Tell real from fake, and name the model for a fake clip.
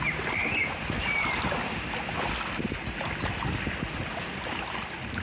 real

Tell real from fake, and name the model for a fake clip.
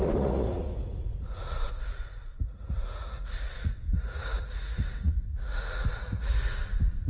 fake, vocoder, Vocos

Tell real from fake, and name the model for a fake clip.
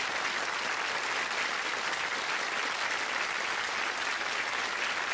real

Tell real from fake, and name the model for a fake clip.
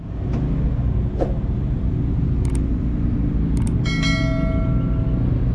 real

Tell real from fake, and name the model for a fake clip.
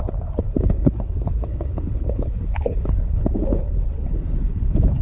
fake, codec, HILCodec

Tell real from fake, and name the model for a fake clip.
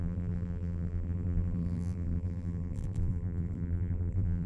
fake, vocoder, BigVGAN v2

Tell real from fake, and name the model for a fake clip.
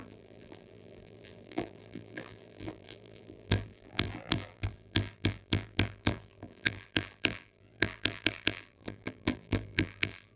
fake, vocoder, BigVGAN v2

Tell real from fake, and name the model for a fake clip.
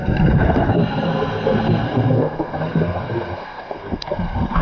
fake, codec, SNAC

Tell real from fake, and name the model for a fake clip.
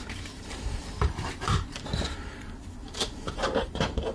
fake, vocoder, BigVGAN v2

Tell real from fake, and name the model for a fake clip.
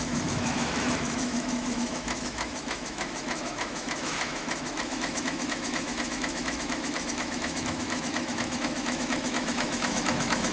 fake, autoencoder, DAC-VAE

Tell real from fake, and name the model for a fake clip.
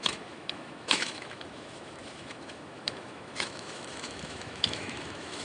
fake, autoencoder, DAC-VAE